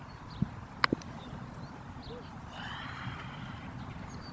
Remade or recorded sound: recorded